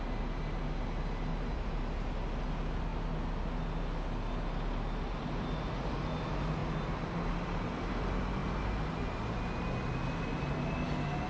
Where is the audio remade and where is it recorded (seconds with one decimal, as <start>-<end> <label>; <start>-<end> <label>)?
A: 0.0-1.3 recorded; 1.3-1.8 remade; 1.8-11.3 recorded